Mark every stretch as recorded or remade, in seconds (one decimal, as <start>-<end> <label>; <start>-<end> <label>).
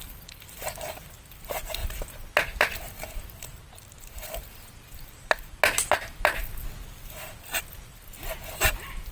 0.0-9.1 recorded